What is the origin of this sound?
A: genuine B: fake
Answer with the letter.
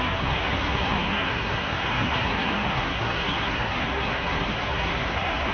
B